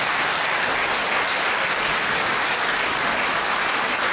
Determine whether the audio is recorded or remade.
recorded